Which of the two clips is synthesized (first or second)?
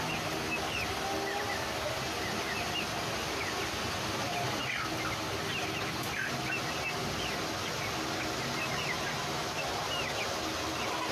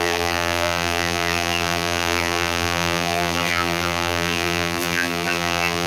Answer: second